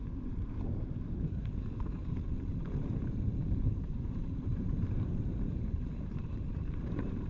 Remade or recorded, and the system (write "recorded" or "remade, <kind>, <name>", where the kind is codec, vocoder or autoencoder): remade, vocoder, BigVGAN v2